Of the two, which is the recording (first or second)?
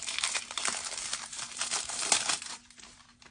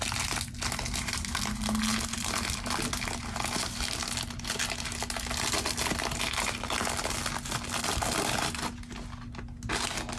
second